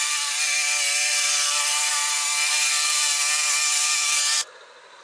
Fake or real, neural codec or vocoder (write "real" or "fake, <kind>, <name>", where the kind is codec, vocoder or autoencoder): real